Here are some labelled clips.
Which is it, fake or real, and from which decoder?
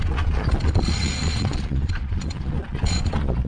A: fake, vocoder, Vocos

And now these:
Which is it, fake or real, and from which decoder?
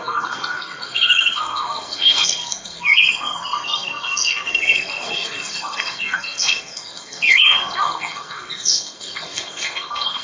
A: fake, codec, SNAC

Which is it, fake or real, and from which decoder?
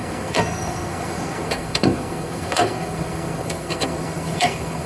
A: fake, codec, SNAC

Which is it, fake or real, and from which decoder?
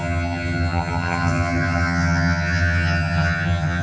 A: fake, vocoder, HiFi-GAN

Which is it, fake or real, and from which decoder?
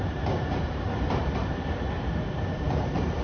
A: fake, vocoder, BigVGAN v2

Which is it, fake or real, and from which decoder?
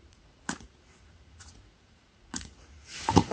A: fake, vocoder, Vocos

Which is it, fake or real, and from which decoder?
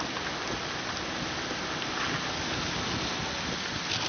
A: real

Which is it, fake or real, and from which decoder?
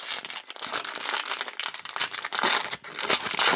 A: real